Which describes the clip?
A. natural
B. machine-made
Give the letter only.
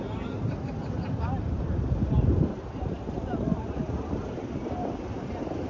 B